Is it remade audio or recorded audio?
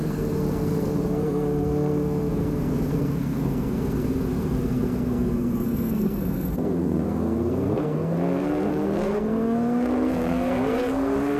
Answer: remade